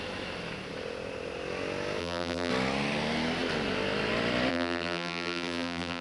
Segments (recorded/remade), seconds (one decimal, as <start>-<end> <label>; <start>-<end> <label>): 0.0-2.0 recorded; 2.0-2.5 remade; 2.5-4.5 recorded; 4.5-6.0 remade